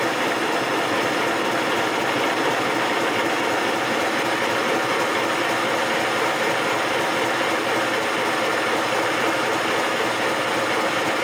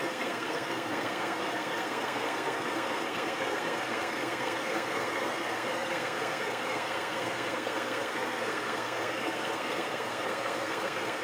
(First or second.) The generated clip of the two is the second